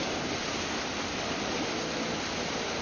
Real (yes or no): yes